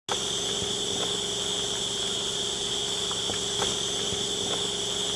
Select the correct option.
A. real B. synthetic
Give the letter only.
A